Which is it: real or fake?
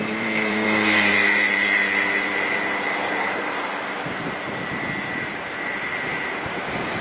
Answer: fake